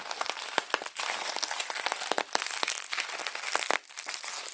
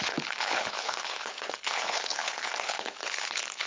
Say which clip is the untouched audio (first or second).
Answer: first